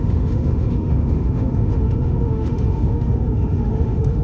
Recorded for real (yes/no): no